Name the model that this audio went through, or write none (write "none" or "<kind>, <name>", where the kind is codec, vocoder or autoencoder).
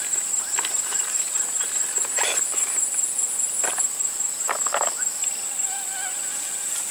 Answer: none